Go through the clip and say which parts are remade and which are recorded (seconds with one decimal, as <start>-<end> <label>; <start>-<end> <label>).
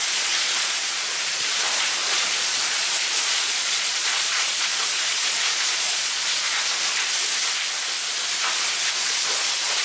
0.0-6.5 remade; 6.5-8.9 recorded; 8.9-9.8 remade